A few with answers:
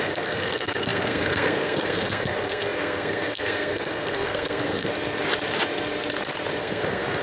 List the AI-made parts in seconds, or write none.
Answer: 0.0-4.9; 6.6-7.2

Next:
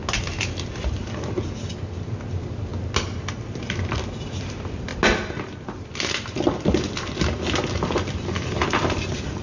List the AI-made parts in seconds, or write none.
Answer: 2.3-2.7; 3.8-4.9; 6.7-9.4

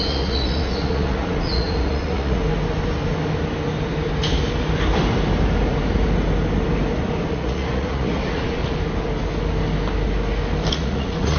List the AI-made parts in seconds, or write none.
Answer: 0.0-2.4; 7.3-8.6; 10.7-11.4

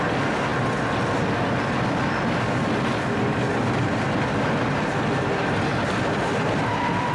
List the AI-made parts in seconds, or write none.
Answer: none

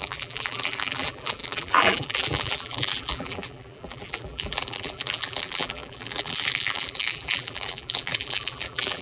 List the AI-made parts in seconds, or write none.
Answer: 0.0-9.0

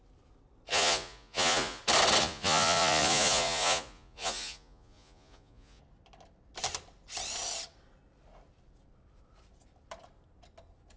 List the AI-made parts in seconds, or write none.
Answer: 0.7-1.8; 2.2-5.8

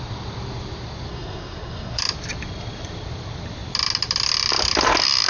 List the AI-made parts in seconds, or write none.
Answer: 1.1-2.0